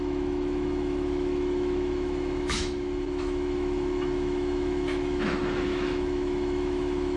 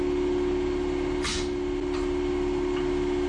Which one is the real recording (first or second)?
second